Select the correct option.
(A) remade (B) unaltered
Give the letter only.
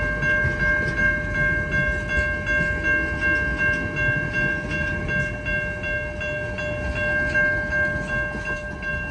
B